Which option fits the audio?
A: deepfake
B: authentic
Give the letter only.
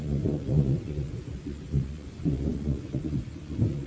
A